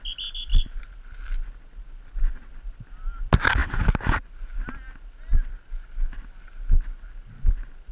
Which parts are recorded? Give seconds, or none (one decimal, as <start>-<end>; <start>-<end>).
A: 0.0-7.9